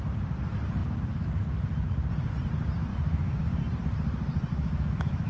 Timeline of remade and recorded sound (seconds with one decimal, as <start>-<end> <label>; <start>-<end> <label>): 0.0-0.8 recorded; 0.8-1.6 remade; 1.6-2.9 recorded; 2.9-3.6 remade; 3.6-4.5 recorded; 4.5-5.3 remade

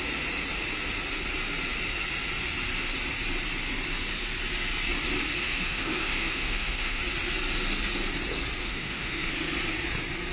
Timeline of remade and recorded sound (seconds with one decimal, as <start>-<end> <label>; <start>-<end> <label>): 0.0-5.4 recorded; 5.4-7.0 remade; 7.0-8.6 recorded; 8.6-9.3 remade; 9.3-10.3 recorded